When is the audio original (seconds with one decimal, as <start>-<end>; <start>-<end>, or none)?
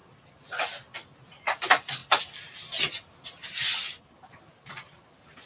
0.0-5.5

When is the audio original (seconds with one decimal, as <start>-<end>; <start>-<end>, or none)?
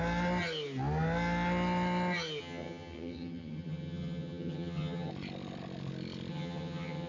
0.0-2.4; 5.1-6.3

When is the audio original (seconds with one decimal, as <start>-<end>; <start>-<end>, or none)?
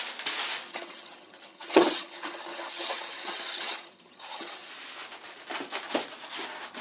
0.0-0.7; 4.7-6.8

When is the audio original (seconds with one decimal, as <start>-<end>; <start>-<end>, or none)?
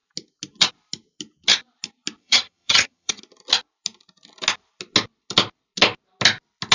0.0-2.2; 3.2-6.7